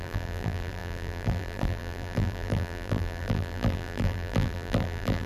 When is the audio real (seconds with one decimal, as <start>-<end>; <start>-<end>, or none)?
none